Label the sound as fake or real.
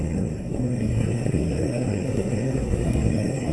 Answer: fake